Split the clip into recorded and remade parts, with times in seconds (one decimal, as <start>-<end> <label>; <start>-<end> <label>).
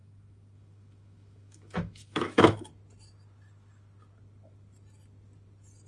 0.0-2.7 remade; 2.7-5.9 recorded